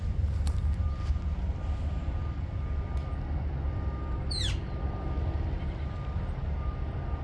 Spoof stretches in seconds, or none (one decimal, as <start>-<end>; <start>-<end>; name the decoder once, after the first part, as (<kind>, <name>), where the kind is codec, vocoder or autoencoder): none